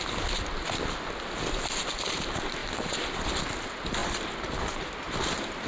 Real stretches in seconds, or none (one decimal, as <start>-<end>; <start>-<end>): 0.0-2.6; 3.4-4.0; 4.7-5.7